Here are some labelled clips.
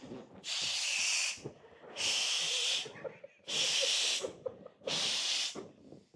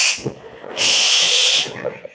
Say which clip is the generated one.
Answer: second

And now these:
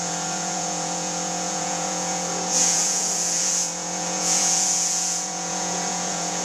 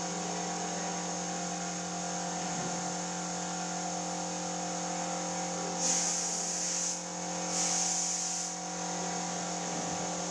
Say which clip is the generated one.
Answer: first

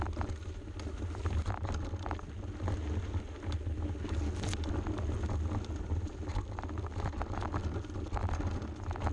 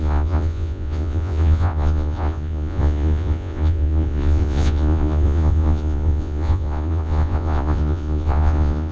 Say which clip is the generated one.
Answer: second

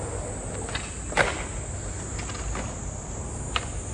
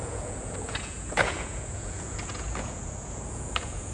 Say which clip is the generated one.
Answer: second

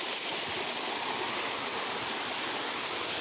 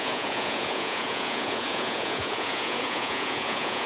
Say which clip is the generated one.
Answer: second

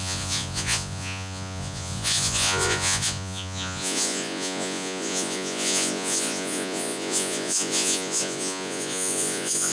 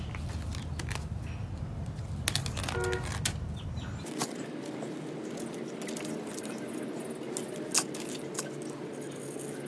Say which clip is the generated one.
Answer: first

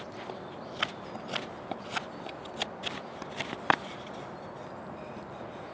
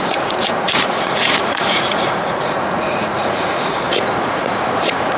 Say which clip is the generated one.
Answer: second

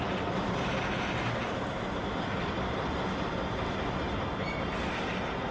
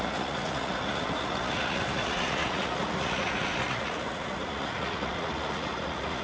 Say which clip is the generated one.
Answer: second